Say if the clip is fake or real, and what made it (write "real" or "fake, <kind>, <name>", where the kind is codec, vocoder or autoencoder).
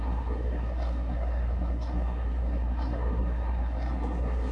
fake, codec, SNAC